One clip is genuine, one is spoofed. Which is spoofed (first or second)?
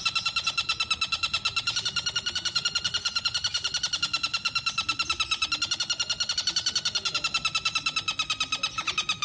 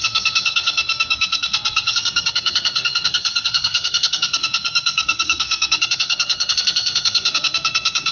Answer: second